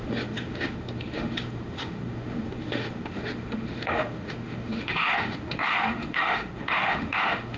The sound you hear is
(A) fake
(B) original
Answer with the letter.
A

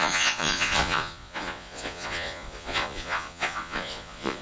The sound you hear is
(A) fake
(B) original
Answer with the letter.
A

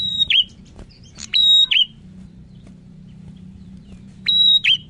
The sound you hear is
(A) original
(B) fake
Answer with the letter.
B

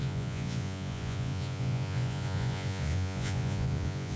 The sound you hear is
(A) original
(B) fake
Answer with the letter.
B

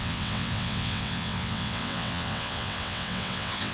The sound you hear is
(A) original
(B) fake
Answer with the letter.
B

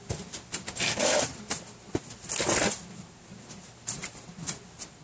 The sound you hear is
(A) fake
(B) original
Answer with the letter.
B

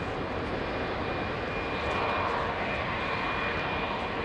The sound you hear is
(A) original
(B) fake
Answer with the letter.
A